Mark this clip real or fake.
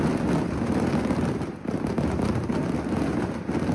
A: real